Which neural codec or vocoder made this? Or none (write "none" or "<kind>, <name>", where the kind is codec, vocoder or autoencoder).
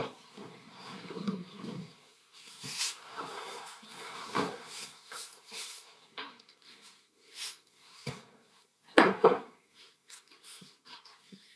codec, SNAC